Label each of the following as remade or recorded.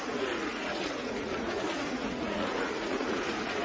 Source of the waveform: remade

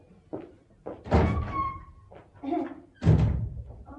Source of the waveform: recorded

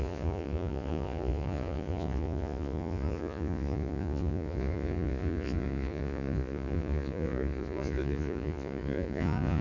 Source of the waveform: remade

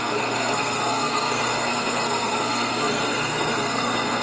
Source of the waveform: remade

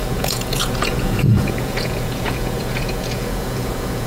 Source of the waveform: remade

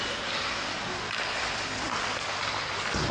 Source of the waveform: recorded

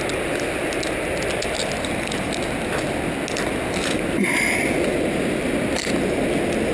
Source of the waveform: recorded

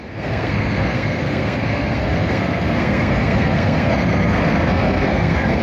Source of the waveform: remade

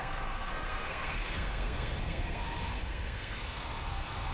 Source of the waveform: remade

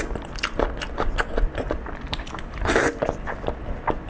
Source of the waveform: recorded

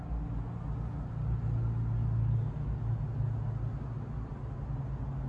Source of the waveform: recorded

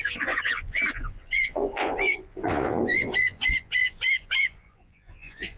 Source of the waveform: remade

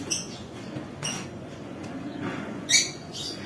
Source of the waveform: remade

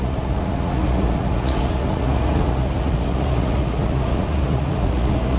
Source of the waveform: remade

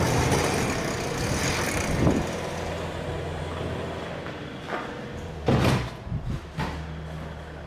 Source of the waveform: recorded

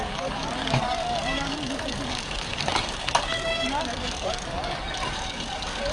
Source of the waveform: remade